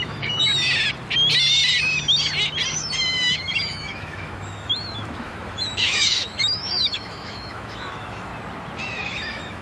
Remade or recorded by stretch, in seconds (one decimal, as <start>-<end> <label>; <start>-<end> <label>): 0.0-0.5 remade; 0.5-2.7 recorded; 2.7-8.3 remade; 8.3-8.8 recorded; 8.8-9.6 remade